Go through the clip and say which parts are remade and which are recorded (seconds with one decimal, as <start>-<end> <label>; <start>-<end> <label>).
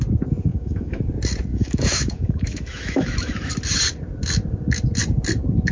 0.0-0.5 recorded; 0.5-1.0 remade; 1.0-1.5 recorded; 1.5-3.5 remade; 3.5-5.7 recorded